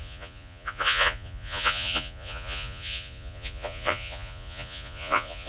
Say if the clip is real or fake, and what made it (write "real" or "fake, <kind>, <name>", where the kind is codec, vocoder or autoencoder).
fake, vocoder, Vocos